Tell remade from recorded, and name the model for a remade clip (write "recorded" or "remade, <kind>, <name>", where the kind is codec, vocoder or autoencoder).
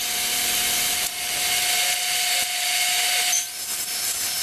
recorded